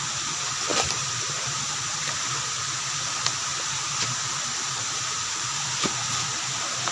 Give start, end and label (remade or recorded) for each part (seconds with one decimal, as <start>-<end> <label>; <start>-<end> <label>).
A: 0.0-0.7 recorded; 0.7-2.0 remade; 2.0-3.5 recorded; 3.5-6.0 remade; 6.0-6.9 recorded